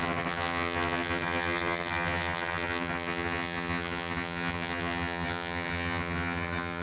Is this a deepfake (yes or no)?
yes